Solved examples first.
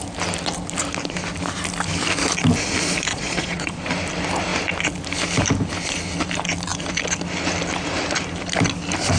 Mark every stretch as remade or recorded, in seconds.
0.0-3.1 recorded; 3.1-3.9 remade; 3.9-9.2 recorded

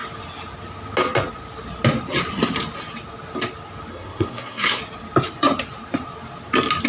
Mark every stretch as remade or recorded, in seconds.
0.0-3.9 recorded; 3.9-4.8 remade; 4.8-6.9 recorded

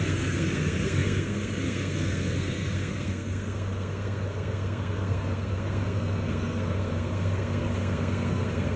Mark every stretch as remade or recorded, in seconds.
0.0-8.8 remade

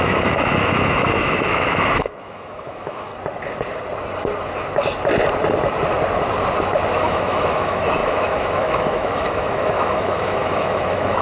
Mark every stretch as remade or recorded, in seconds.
0.0-3.1 remade; 3.1-7.0 recorded; 7.0-11.2 remade

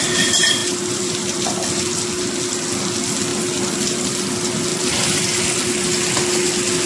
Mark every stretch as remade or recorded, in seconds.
0.0-0.6 recorded; 0.6-1.7 remade; 1.7-4.7 recorded; 4.7-5.4 remade; 5.4-6.9 recorded

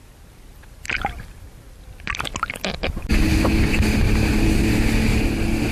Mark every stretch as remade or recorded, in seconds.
0.0-5.7 recorded

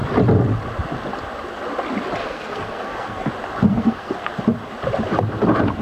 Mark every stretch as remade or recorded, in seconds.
0.0-2.2 recorded; 2.2-3.3 remade; 3.3-3.7 recorded; 3.7-4.4 remade; 4.4-5.8 recorded

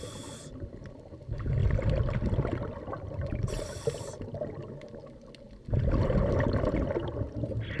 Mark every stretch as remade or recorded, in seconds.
0.0-7.8 recorded